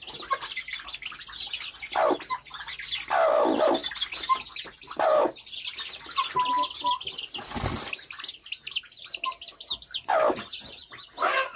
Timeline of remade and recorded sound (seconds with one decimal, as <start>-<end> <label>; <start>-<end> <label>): 0.0-11.6 recorded